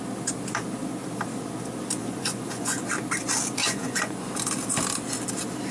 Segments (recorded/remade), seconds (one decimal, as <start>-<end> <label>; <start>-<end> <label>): 0.0-2.0 recorded; 2.0-2.9 remade; 2.9-3.6 recorded; 3.6-4.3 remade; 4.3-5.7 recorded